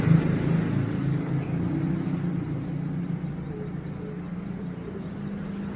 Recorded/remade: recorded